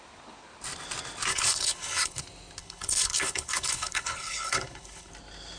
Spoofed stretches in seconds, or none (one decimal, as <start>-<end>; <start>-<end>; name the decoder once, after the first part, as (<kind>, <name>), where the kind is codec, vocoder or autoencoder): 1.3-2.2 (codec, HILCodec); 2.6-5.1